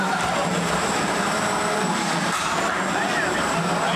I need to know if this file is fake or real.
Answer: fake